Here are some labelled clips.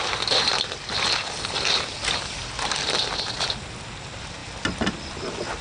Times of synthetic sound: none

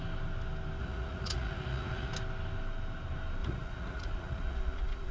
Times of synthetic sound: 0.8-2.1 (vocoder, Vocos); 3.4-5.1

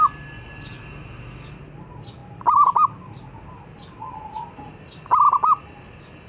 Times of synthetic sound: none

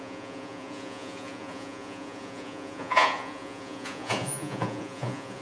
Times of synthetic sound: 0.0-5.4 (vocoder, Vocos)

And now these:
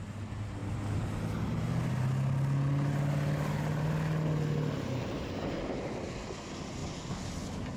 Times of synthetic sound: none